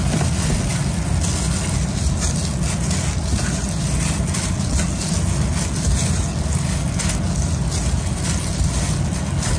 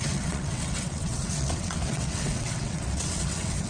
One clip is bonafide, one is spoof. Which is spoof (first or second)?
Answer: second